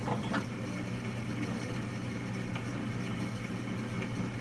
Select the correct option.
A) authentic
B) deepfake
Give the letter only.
A